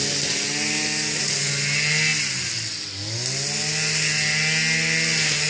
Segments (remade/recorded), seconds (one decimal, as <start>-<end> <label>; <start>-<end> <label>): 0.0-5.5 recorded